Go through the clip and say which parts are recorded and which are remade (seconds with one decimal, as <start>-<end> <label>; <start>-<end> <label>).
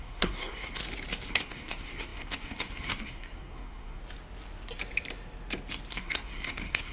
0.0-0.8 remade; 0.8-1.3 recorded; 1.3-4.0 remade; 4.0-5.9 recorded; 5.9-6.9 remade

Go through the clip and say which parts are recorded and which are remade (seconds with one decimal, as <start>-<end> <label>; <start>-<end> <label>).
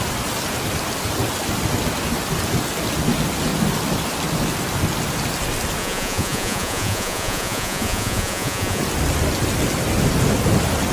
0.0-5.8 recorded; 5.8-8.8 remade; 8.8-10.9 recorded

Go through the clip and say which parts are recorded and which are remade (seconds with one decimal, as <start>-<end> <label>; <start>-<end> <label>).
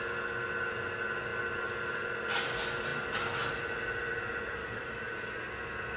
0.0-4.6 recorded; 4.6-5.1 remade; 5.1-6.0 recorded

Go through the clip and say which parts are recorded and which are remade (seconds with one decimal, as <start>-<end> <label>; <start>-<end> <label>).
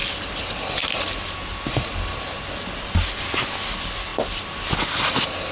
0.0-5.5 recorded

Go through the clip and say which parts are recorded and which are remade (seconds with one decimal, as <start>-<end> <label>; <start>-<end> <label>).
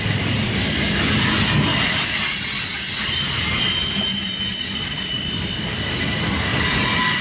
0.0-7.2 recorded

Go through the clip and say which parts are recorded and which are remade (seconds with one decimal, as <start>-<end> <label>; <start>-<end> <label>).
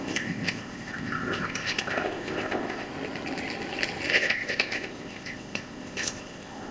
0.0-2.9 remade; 2.9-4.1 recorded; 4.1-6.7 remade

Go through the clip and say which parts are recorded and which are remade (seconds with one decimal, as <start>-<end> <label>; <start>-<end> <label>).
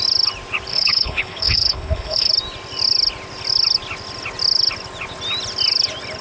0.0-0.7 recorded; 0.7-2.3 remade; 2.3-6.2 recorded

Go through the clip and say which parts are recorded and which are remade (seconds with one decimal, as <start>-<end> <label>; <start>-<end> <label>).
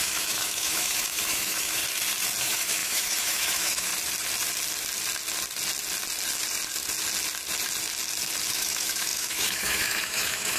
0.0-1.8 remade; 1.8-2.4 recorded; 2.4-3.9 remade; 3.9-8.5 recorded; 8.5-10.6 remade